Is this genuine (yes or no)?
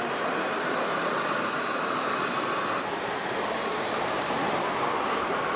no